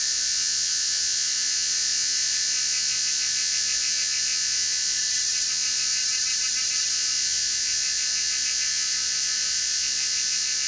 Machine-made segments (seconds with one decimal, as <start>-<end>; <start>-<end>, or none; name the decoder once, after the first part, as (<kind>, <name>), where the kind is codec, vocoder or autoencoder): 0.0-5.0 (vocoder, Vocos); 5.5-6.0; 6.9-10.7